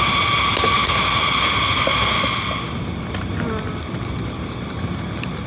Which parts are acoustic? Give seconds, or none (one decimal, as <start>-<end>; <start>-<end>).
0.0-5.5